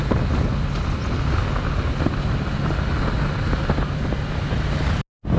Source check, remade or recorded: recorded